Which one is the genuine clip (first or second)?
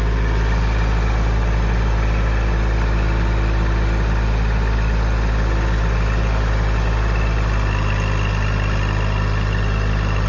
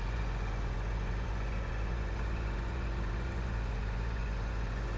first